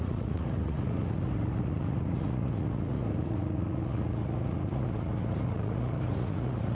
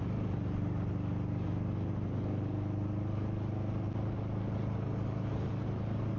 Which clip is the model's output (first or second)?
first